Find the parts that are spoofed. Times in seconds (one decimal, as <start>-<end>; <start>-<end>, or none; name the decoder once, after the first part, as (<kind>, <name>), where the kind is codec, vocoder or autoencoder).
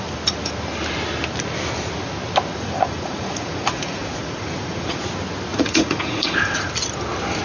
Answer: 2.5-5.0 (vocoder, Vocos); 5.5-6.7